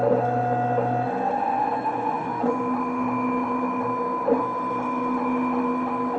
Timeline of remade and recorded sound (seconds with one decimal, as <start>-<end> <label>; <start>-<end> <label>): 0.0-1.7 recorded; 1.7-2.6 remade; 2.6-6.2 recorded

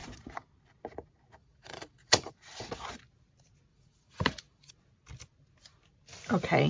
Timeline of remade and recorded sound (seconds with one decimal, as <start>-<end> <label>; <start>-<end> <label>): 0.0-1.4 recorded; 1.4-2.3 remade; 2.3-3.7 recorded; 3.7-4.7 remade; 4.7-6.7 recorded

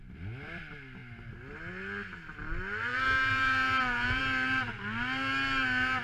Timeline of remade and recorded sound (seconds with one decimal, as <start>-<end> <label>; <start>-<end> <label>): 0.0-2.9 recorded; 2.9-4.2 remade; 4.2-6.0 recorded

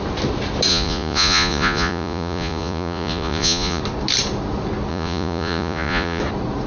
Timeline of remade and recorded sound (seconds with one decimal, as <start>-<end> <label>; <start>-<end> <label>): 0.0-0.7 recorded; 0.7-3.8 remade; 3.8-4.9 recorded; 4.9-6.2 remade; 6.2-6.7 recorded

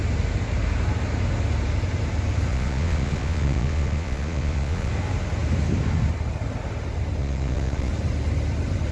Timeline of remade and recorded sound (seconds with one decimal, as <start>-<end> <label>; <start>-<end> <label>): 0.0-2.5 recorded; 2.5-4.9 remade; 4.9-7.2 recorded; 7.2-7.9 remade; 7.9-8.9 recorded